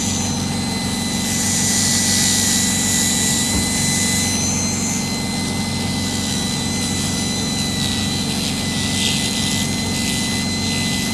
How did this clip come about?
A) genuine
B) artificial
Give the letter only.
A